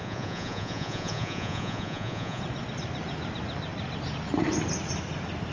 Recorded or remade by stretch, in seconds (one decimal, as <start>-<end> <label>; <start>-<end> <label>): 0.0-2.4 remade; 2.4-5.5 recorded